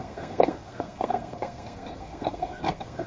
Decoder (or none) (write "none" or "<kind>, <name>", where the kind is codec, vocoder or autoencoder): codec, SNAC